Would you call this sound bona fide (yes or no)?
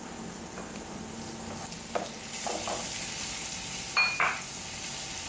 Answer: yes